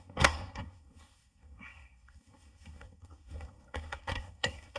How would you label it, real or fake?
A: fake